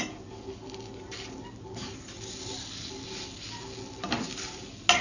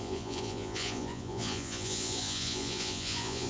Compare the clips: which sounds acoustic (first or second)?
first